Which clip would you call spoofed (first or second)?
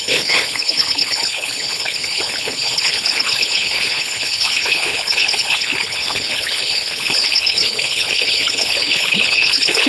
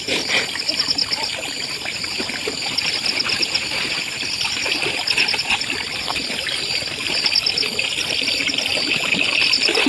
first